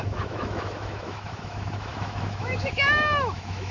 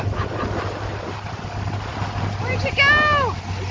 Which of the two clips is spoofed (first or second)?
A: first